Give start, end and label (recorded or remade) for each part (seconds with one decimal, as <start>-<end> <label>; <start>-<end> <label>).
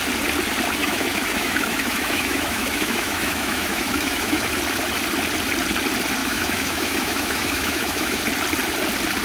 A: 0.0-0.8 recorded; 0.8-4.5 remade; 4.5-6.2 recorded; 6.2-8.2 remade; 8.2-9.2 recorded